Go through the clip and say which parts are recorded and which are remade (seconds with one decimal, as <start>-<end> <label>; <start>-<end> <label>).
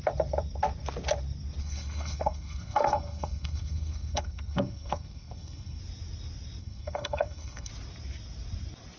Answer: 0.0-1.6 recorded; 1.6-5.8 remade; 5.8-6.6 recorded; 6.6-7.7 remade; 7.7-9.0 recorded